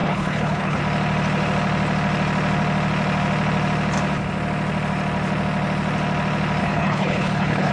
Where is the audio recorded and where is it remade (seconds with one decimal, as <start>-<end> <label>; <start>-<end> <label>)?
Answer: 0.0-0.8 remade; 0.8-6.6 recorded; 6.6-7.7 remade